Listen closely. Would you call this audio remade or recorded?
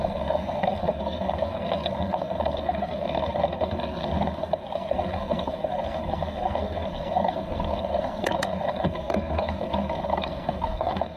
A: remade